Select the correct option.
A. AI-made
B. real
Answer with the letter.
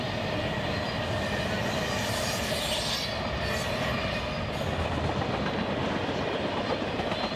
B